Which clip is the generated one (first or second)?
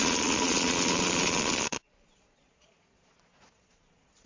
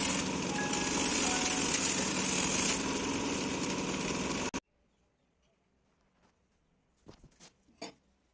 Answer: first